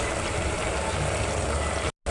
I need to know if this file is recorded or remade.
recorded